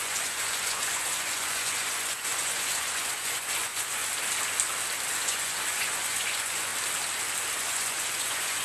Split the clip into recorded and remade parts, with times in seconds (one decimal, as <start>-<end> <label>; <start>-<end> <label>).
0.0-4.0 remade; 4.0-5.2 recorded; 5.2-6.7 remade; 6.7-7.6 recorded; 7.6-8.6 remade